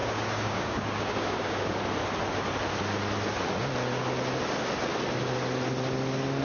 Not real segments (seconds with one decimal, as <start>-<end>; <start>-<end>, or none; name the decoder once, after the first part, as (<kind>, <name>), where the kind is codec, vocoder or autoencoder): 0.0-1.8 (codec, DAC)